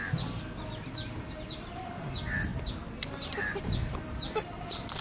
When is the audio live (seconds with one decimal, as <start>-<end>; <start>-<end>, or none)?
0.0-5.0